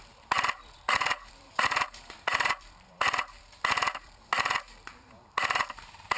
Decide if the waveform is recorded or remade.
remade